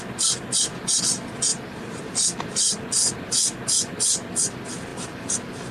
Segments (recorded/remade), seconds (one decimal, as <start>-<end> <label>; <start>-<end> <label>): 0.0-1.5 recorded; 1.5-2.4 remade; 2.4-5.7 recorded